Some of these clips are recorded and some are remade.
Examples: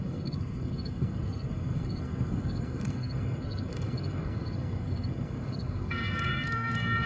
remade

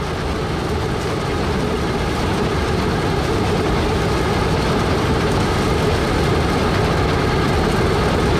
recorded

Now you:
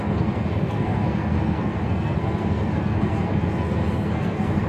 remade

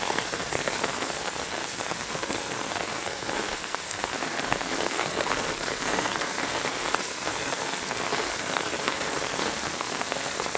remade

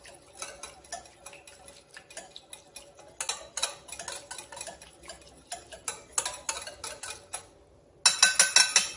recorded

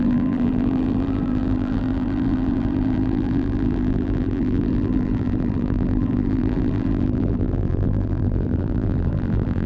remade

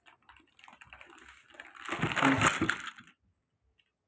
recorded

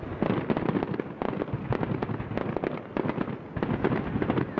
recorded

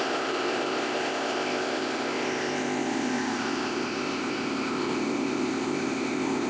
remade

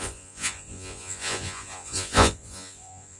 remade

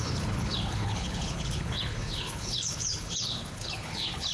remade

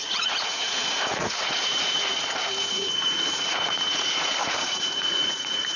remade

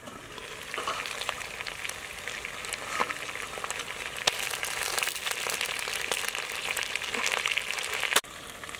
recorded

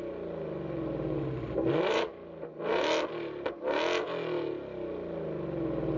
recorded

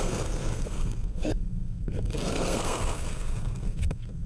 remade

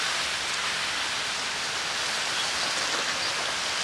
recorded